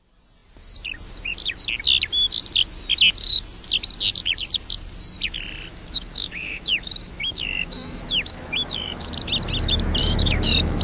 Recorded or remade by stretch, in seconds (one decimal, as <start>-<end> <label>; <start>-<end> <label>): 0.0-5.7 recorded; 5.7-9.1 remade; 9.1-10.0 recorded; 10.0-10.8 remade